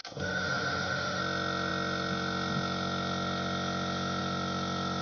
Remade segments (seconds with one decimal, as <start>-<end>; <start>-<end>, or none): 0.0-1.2